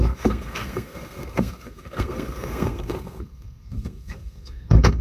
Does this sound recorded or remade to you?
remade